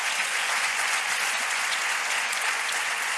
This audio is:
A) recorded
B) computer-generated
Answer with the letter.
B